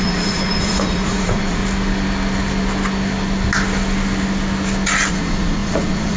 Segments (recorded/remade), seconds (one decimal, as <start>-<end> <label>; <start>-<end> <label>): 0.0-1.6 remade; 1.6-5.1 recorded; 5.1-6.2 remade

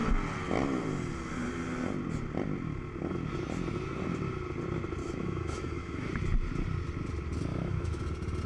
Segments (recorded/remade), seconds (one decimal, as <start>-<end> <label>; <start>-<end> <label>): 0.0-5.0 recorded; 5.0-6.1 remade; 6.1-7.5 recorded; 7.5-8.0 remade; 8.0-8.5 recorded